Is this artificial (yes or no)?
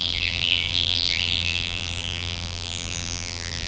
yes